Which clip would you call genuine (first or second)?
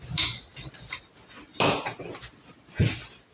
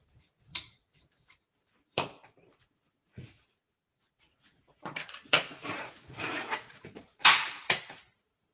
first